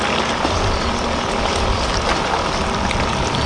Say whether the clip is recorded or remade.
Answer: recorded